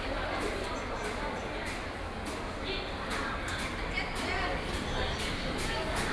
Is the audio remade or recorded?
recorded